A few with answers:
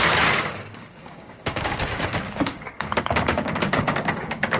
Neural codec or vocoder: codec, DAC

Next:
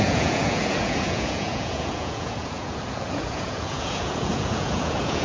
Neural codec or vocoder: vocoder, Vocos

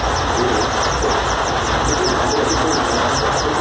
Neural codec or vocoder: none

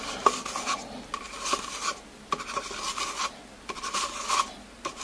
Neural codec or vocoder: none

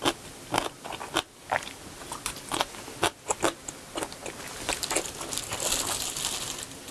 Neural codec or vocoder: none